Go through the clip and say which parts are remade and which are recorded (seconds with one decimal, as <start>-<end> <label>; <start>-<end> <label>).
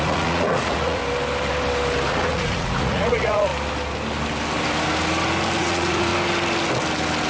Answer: 0.0-1.0 remade; 1.0-2.1 recorded; 2.1-3.5 remade; 3.5-5.6 recorded; 5.6-6.1 remade; 6.1-7.3 recorded